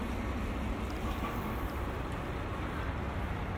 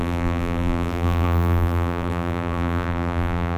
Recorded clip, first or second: first